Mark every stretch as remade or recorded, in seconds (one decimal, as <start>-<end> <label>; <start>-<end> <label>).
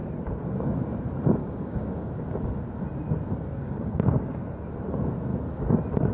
0.0-1.4 recorded; 1.4-2.2 remade; 2.2-3.6 recorded; 3.6-4.3 remade; 4.3-6.1 recorded